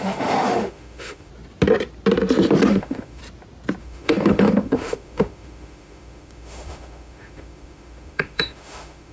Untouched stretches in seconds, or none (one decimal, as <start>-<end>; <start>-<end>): 1.3-2.7; 3.2-3.8